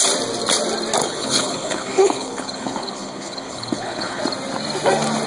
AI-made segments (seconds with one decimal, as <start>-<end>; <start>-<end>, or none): 1.0-4.2